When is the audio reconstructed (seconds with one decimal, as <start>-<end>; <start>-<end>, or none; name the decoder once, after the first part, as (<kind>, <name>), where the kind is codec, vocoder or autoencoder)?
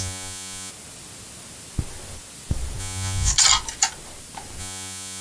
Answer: 0.0-0.7 (vocoder, Vocos); 2.8-3.3; 4.6-5.2